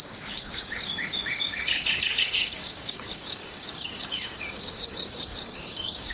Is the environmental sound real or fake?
fake